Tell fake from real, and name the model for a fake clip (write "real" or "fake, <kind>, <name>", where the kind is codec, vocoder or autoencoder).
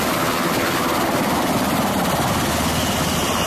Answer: real